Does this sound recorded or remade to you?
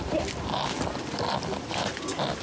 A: remade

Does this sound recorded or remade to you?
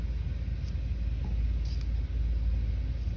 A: recorded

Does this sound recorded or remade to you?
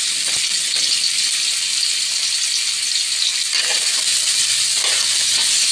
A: recorded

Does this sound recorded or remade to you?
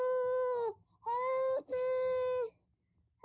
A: recorded